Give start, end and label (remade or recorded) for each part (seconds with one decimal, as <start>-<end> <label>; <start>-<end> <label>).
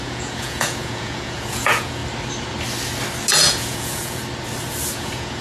0.0-2.0 remade; 2.0-3.3 recorded; 3.3-4.2 remade; 4.2-4.9 recorded; 4.9-5.4 remade